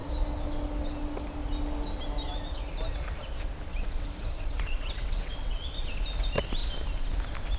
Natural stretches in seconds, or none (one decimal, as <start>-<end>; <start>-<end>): 0.0-3.7; 5.9-7.6